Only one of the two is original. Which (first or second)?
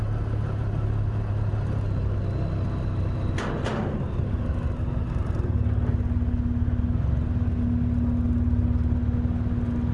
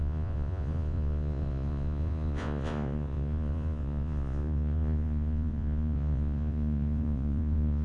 first